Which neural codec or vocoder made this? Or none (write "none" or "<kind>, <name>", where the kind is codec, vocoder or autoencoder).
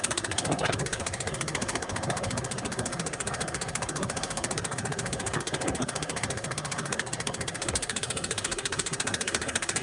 codec, SNAC